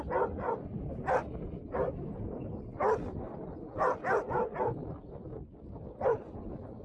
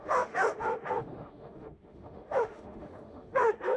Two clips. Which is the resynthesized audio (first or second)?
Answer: second